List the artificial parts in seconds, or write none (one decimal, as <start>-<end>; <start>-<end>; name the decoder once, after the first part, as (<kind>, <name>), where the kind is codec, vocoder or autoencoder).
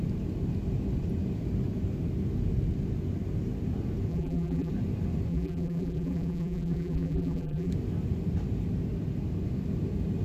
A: 4.1-4.7 (vocoder, BigVGAN v2); 5.3-7.7